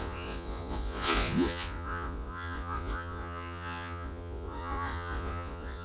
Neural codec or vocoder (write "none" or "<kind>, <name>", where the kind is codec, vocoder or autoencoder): vocoder, Vocos